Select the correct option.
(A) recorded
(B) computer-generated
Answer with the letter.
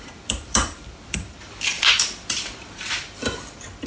B